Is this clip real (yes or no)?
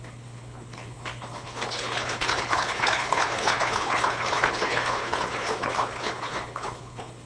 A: no